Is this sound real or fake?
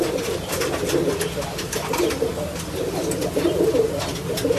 real